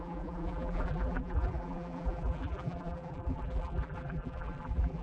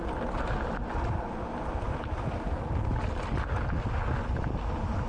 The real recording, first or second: second